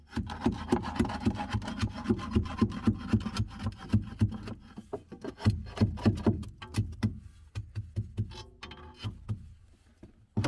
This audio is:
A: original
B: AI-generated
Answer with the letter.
A